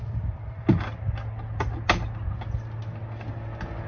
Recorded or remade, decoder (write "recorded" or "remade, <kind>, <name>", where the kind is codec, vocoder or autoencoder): recorded